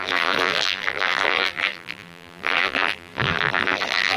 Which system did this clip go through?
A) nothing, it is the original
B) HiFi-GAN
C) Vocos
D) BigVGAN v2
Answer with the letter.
D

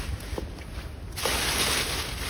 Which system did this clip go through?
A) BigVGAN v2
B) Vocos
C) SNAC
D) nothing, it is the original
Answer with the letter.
D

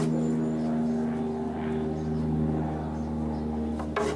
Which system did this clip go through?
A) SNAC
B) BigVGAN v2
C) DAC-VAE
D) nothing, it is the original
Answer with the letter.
D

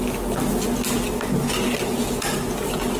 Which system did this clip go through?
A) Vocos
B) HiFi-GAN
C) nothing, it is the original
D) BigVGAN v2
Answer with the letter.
C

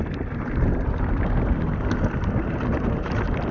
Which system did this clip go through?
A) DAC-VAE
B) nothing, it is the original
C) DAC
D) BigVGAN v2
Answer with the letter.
B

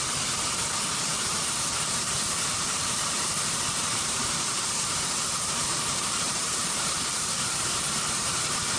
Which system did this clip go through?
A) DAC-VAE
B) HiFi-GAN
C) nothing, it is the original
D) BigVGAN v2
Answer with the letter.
D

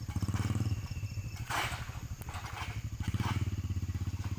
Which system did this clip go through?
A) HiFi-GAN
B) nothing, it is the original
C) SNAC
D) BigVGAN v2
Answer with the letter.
D